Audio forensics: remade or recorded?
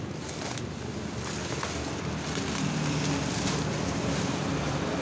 recorded